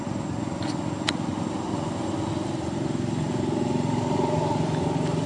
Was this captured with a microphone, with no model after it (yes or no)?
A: yes